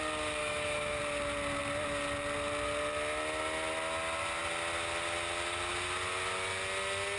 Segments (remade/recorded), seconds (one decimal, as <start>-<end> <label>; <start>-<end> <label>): 0.0-0.4 recorded; 0.4-1.0 remade; 1.0-7.2 recorded